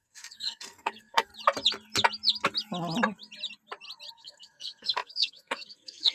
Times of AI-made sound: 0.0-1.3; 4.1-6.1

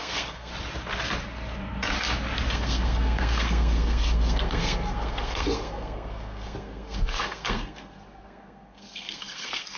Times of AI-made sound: 0.0-0.5; 2.5-9.8

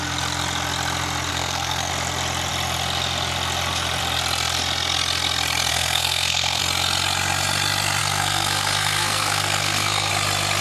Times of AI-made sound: 1.3-1.9; 5.7-6.6; 8.0-10.1

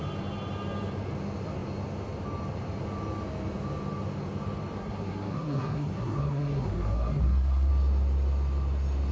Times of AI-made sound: 4.8-7.7

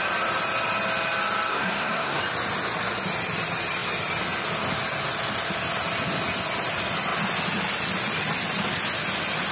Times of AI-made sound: 1.5-2.2

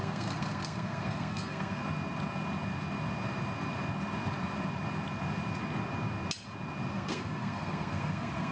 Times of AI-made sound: 0.0-1.8; 6.9-8.5

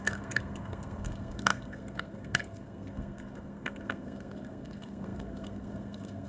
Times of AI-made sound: 0.0-6.3

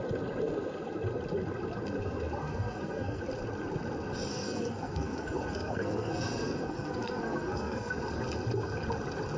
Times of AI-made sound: 2.4-3.2; 4.3-7.9